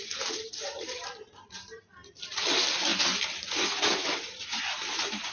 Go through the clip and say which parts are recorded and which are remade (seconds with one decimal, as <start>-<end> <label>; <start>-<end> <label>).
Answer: 0.0-2.0 remade; 2.0-2.5 recorded; 2.5-2.9 remade; 2.9-3.9 recorded; 3.9-5.3 remade